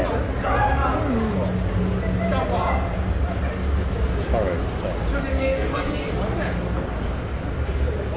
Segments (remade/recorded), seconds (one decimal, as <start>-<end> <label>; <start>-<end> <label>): 0.0-5.3 recorded; 5.3-6.1 remade; 6.1-8.2 recorded